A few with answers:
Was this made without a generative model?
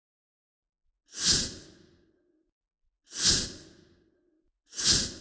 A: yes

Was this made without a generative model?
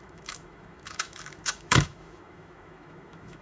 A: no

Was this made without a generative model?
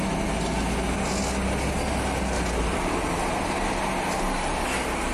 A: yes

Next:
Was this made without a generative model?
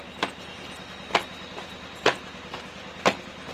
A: yes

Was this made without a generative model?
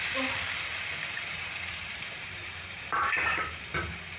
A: no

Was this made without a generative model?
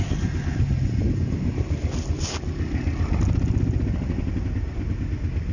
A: yes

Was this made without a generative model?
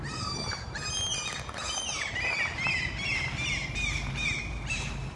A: no